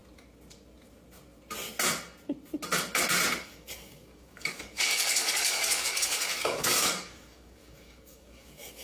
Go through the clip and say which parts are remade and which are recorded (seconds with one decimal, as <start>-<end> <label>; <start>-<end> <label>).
0.0-3.4 recorded; 3.4-8.8 remade